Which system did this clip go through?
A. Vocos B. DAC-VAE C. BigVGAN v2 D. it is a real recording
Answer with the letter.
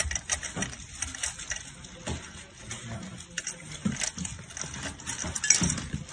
D